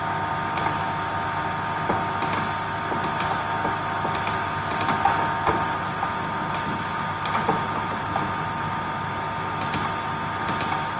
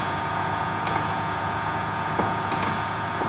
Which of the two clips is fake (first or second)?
second